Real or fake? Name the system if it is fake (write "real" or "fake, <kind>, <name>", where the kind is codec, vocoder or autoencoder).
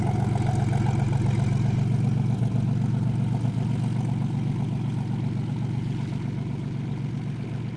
real